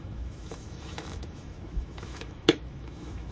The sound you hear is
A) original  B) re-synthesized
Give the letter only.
B